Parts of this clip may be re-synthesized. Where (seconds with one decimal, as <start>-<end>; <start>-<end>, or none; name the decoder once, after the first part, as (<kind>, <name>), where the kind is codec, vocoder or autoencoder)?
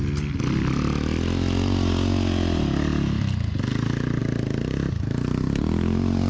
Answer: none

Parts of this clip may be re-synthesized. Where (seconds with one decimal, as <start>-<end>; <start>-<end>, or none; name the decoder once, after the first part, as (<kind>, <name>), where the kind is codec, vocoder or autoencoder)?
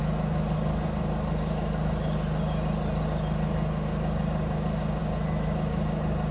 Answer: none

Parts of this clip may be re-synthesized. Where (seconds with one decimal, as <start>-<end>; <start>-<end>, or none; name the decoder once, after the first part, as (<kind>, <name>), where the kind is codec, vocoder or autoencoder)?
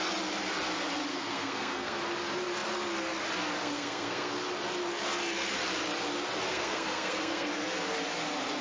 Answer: 1.1-2.0 (codec, SNAC); 3.6-4.3; 6.5-7.5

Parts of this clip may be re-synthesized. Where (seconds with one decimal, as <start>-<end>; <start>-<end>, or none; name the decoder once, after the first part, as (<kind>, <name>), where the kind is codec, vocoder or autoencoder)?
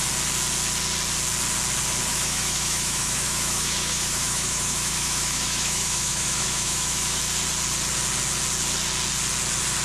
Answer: 2.1-7.2 (autoencoder, DAC-VAE)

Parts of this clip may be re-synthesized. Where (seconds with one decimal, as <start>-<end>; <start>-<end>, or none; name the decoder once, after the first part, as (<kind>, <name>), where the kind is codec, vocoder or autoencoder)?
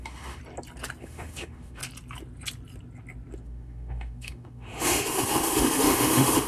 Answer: 0.0-0.4 (autoencoder, DAC-VAE); 1.0-1.8; 3.4-6.5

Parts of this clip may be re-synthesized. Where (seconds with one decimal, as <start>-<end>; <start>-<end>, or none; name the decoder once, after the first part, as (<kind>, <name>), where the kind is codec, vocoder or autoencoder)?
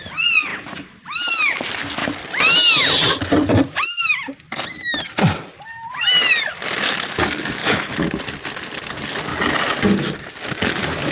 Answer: 7.6-8.1 (autoencoder, DAC-VAE)